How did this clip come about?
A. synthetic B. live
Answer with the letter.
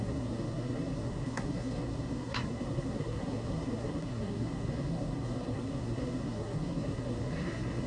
A